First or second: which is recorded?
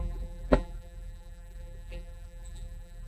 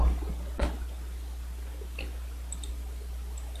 second